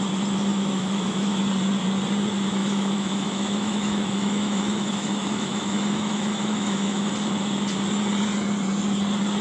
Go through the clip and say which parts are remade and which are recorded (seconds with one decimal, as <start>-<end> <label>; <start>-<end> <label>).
0.0-0.5 recorded; 0.5-1.4 remade; 1.4-2.6 recorded; 2.6-7.1 remade; 7.1-9.4 recorded